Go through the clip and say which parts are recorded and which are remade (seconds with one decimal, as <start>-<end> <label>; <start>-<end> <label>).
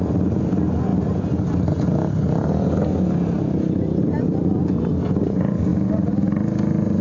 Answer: 0.0-7.0 recorded